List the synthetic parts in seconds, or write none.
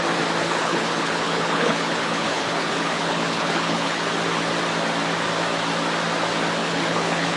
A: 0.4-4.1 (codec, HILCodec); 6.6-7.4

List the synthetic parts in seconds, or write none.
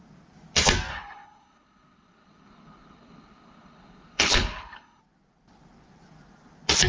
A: 0.9-5.0 (codec, HILCodec)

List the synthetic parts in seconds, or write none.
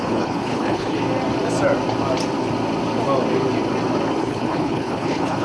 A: 0.0-1.0 (codec, HILCodec); 4.2-5.4